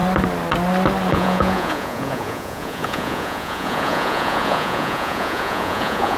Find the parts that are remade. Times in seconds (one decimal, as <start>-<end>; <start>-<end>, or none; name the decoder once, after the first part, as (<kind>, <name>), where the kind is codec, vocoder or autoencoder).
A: 1.1-6.2 (vocoder, Vocos)